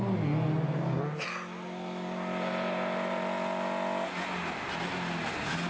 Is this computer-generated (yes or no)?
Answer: no